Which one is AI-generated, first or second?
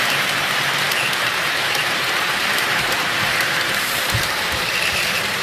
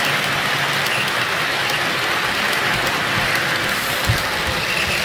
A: first